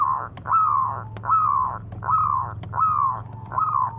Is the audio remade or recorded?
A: recorded